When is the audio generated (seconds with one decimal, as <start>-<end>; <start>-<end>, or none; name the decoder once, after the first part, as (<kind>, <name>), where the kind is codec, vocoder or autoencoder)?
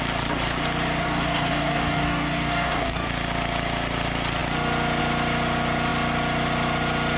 1.0-3.1 (codec, DAC)